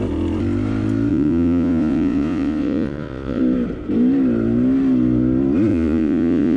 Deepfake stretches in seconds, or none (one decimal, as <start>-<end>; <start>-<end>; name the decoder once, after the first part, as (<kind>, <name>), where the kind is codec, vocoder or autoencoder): 1.1-3.4 (vocoder, Vocos); 5.7-6.6